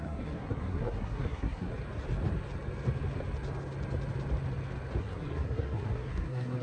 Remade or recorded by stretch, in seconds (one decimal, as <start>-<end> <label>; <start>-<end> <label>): 0.0-1.7 remade; 1.7-5.0 recorded; 5.0-6.6 remade